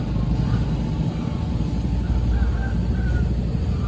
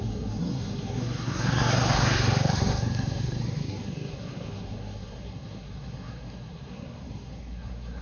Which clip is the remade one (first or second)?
second